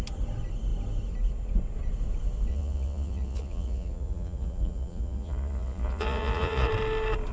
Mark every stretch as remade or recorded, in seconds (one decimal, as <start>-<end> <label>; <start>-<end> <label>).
0.0-2.5 recorded; 2.5-6.7 remade; 6.7-7.3 recorded